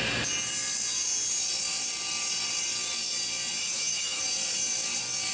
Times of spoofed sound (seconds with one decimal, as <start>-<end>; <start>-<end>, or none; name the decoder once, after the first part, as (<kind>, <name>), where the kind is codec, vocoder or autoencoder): 3.6-4.2 (autoencoder, DAC-VAE)